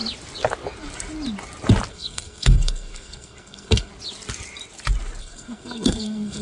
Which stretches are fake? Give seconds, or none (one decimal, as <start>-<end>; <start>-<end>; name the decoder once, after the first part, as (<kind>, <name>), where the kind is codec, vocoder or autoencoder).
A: 1.9-3.9 (codec, SNAC); 5.2-6.4

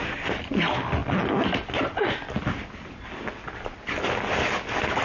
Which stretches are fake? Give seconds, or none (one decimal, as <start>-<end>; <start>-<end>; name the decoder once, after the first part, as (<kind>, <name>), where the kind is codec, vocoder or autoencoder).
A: none

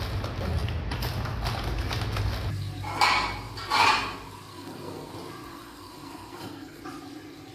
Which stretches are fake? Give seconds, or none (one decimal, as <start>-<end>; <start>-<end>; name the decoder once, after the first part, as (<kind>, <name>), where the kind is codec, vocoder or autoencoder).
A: 4.5-5.1 (codec, SNAC); 5.5-6.8

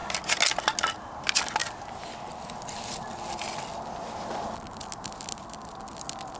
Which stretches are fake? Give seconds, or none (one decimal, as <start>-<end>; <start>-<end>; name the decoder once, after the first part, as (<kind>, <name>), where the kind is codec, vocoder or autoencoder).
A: none

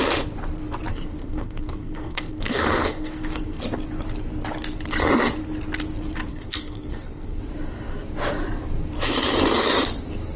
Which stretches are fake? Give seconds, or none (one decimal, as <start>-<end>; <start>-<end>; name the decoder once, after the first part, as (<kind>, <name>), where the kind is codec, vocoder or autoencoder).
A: 0.9-3.6 (codec, SNAC); 6.3-7.4

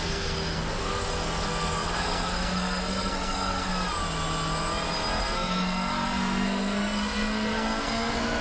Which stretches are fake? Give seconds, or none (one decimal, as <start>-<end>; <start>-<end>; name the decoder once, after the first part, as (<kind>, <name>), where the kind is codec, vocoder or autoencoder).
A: 0.0-3.7 (codec, SNAC); 5.2-8.4